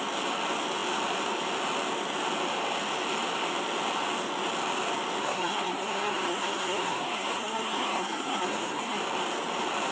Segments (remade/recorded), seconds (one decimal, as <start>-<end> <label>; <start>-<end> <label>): 0.0-5.2 recorded; 5.2-9.0 remade; 9.0-9.9 recorded